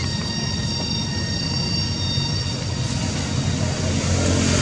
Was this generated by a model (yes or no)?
no